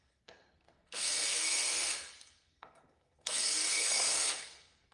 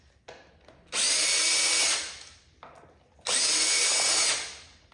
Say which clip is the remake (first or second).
first